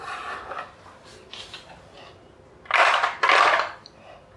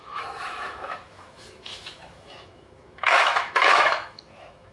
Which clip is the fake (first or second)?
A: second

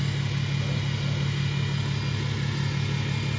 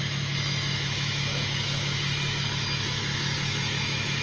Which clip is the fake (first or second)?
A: second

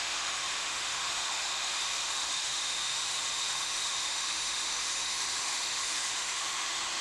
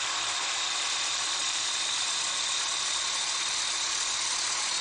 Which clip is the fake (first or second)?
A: first